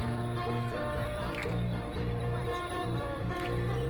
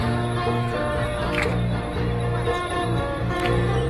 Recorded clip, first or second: second